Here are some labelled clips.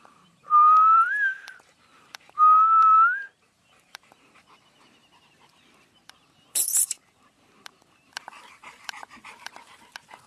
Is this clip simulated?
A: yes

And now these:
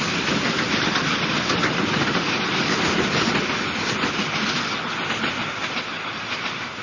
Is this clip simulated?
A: no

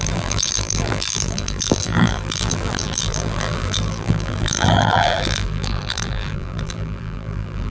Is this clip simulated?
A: yes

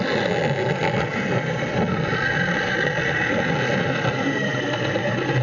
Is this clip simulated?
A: no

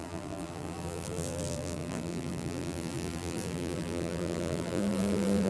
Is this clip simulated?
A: yes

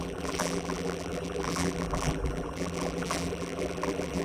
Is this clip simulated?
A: yes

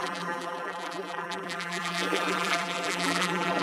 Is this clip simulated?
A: yes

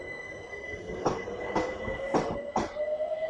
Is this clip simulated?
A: no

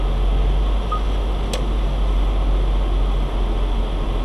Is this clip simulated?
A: no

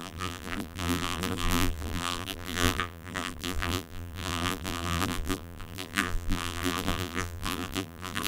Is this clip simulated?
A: yes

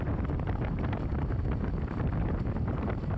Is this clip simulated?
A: yes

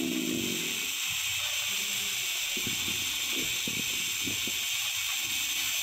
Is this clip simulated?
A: no